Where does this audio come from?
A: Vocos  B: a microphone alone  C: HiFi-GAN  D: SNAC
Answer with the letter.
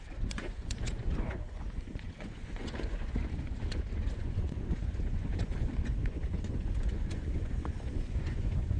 A